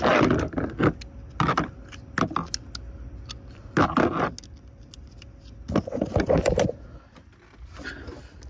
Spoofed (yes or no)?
no